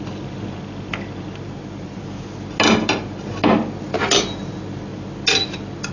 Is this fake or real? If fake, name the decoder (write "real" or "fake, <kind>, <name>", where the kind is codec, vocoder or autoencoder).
real